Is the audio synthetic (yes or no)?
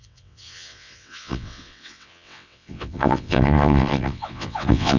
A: yes